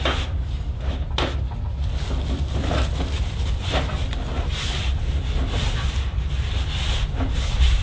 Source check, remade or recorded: recorded